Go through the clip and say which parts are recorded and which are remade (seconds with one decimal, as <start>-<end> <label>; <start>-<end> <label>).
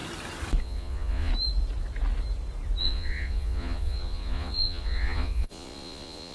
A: 0.0-0.6 recorded; 0.6-1.3 remade; 1.3-2.8 recorded; 2.8-6.3 remade